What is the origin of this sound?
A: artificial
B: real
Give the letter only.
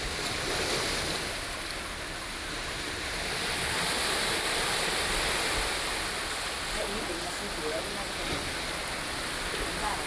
B